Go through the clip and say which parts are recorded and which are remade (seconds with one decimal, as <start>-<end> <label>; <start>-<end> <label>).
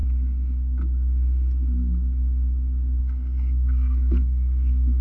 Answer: 0.0-3.0 recorded; 3.0-5.0 remade